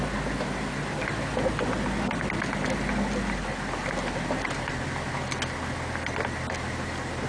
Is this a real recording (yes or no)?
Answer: yes